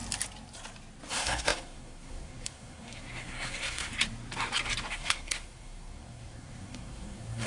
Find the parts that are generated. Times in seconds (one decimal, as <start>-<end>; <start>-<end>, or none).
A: 1.1-3.9; 4.9-7.5